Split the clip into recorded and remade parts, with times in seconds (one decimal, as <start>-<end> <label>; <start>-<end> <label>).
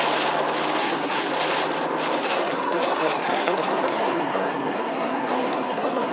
0.0-0.8 recorded; 0.8-1.3 remade; 1.3-2.2 recorded; 2.2-6.1 remade